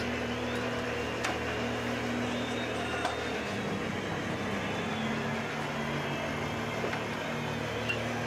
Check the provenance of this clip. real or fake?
real